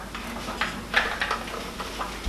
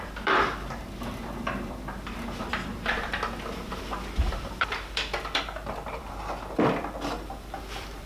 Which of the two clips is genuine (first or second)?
first